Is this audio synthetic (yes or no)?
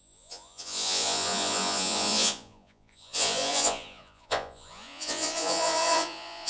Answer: yes